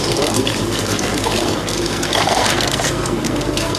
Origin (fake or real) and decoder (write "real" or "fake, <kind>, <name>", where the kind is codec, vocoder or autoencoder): fake, codec, SNAC